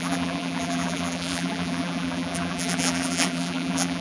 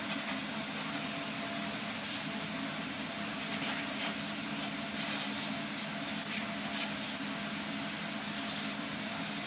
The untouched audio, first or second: second